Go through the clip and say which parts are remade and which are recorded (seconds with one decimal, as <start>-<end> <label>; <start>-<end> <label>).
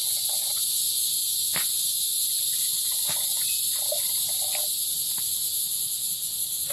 0.0-1.2 remade; 1.2-5.2 recorded; 5.2-6.7 remade